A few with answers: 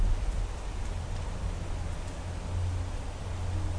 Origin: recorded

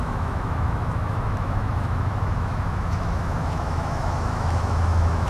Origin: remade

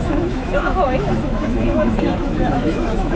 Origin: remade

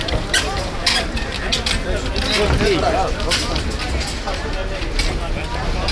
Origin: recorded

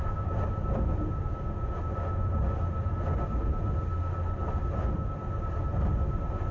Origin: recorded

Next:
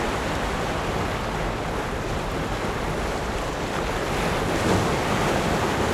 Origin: recorded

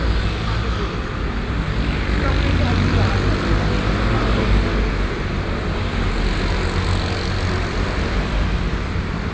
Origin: recorded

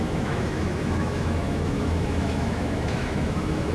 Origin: remade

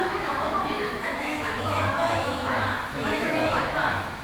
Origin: remade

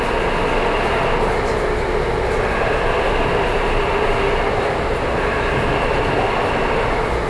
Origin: recorded